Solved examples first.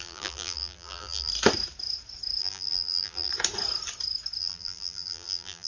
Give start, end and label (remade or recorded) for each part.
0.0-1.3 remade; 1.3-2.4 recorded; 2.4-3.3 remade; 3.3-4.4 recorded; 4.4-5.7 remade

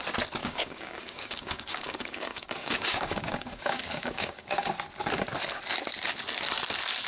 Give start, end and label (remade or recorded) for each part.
0.0-0.4 recorded; 0.4-4.7 remade; 4.7-7.1 recorded